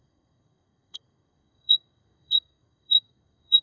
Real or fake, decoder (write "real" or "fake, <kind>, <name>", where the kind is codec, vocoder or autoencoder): fake, codec, SNAC